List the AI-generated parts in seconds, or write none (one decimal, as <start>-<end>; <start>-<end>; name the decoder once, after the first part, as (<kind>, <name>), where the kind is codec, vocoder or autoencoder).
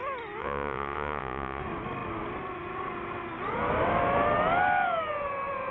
0.4-1.6 (vocoder, Vocos)